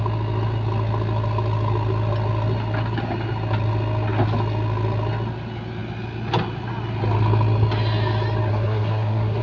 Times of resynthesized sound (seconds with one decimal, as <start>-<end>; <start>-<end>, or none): 8.5-9.4